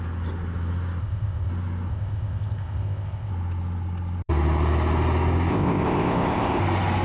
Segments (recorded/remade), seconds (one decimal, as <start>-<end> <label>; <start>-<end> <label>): 0.0-1.0 recorded; 1.0-1.5 remade; 1.5-1.9 recorded; 1.9-3.3 remade; 3.3-5.5 recorded; 5.5-6.6 remade; 6.6-7.0 recorded